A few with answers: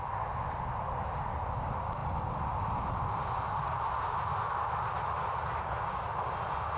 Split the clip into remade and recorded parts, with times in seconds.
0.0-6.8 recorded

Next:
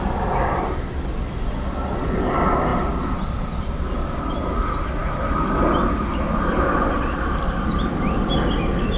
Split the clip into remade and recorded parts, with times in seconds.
0.0-9.0 recorded

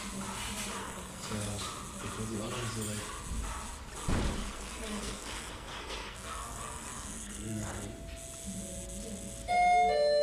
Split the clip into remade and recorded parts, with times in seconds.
0.0-0.8 recorded; 0.8-1.5 remade; 1.5-4.4 recorded; 4.4-7.7 remade; 7.7-10.2 recorded